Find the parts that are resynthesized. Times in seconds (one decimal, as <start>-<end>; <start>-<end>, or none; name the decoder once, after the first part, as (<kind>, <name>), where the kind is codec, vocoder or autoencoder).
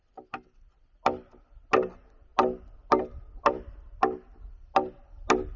none